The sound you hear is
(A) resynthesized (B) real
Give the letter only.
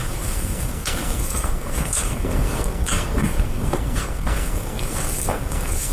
A